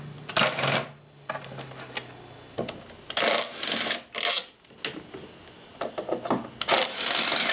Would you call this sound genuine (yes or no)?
yes